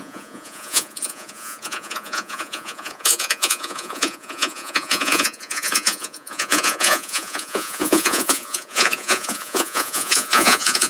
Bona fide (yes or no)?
no